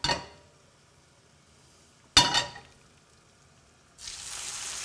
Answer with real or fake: real